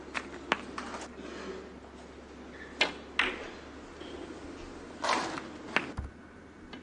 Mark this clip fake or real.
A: real